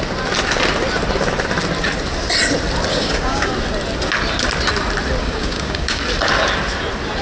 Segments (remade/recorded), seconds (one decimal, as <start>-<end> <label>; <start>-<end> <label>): 0.0-2.9 recorded; 2.9-3.5 remade; 3.5-5.2 recorded; 5.2-6.0 remade; 6.0-7.2 recorded